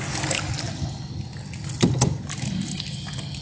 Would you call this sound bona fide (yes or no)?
yes